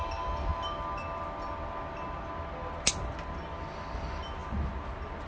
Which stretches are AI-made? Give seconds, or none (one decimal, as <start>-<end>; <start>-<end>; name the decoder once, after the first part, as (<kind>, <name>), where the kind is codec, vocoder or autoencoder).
none